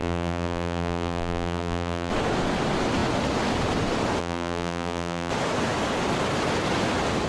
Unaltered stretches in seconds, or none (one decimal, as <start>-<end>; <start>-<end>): 2.1-4.2; 5.3-7.3